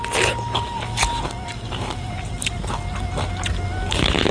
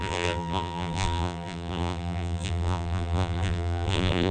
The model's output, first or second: second